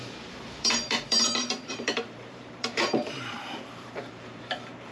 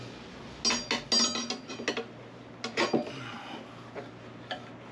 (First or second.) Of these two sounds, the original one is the second